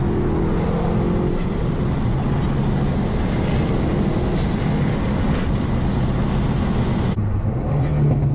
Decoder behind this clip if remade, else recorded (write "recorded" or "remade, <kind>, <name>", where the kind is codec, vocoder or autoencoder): recorded